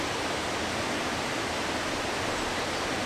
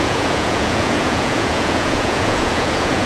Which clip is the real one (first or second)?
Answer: first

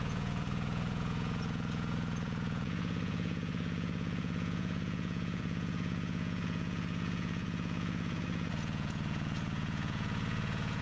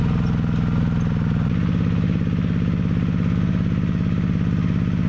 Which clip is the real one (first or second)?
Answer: second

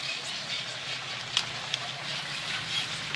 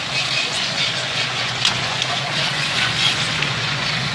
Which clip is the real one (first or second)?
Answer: first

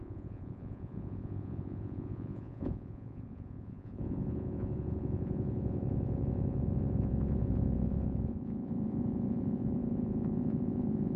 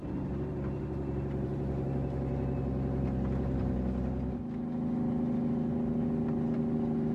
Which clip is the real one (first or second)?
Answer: second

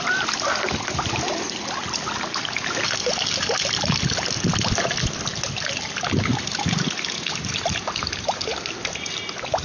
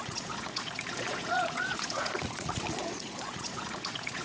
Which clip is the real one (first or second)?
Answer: first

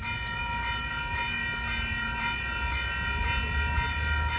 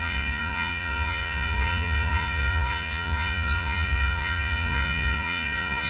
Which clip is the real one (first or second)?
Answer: first